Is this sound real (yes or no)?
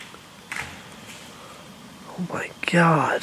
yes